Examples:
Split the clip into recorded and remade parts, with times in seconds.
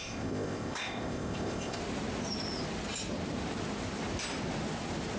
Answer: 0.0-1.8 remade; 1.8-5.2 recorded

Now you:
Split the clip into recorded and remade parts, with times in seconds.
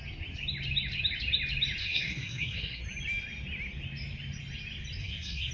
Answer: 0.0-1.8 recorded; 1.8-2.8 remade; 2.8-5.0 recorded; 5.0-5.5 remade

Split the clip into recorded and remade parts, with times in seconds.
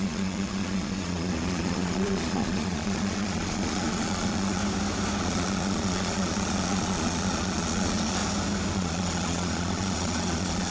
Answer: 0.0-4.6 remade; 4.6-5.2 recorded; 5.2-8.2 remade; 8.2-8.7 recorded; 8.7-10.7 remade